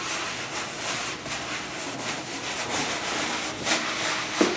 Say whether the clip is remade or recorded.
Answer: recorded